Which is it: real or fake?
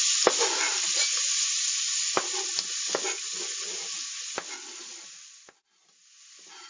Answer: real